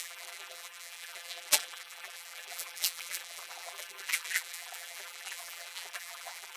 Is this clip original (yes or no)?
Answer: no